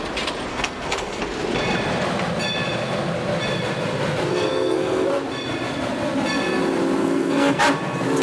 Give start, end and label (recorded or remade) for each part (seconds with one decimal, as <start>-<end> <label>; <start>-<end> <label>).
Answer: 0.0-0.5 recorded; 0.5-1.2 remade; 1.2-4.3 recorded; 4.3-5.1 remade; 5.1-7.0 recorded; 7.0-7.6 remade; 7.6-8.2 recorded